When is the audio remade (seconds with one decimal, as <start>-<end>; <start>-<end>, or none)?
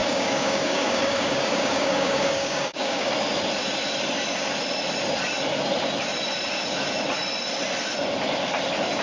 0.0-3.1